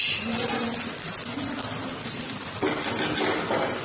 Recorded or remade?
recorded